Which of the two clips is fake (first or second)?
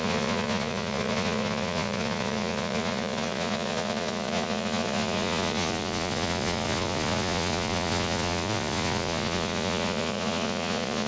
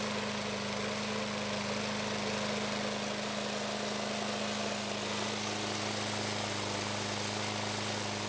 first